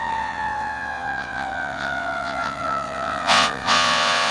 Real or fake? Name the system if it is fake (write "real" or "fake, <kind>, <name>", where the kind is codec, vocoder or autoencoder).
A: fake, vocoder, WaveNeXt